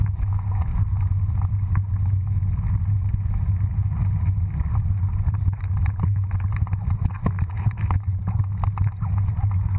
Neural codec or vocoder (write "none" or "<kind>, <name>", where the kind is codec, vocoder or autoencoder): none